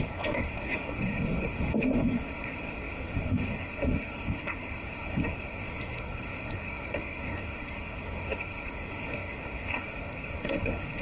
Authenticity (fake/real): fake